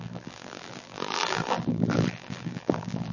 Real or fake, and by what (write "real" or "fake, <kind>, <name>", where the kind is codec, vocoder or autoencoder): fake, vocoder, BigVGAN v2